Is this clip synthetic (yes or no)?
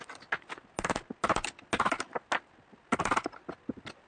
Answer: no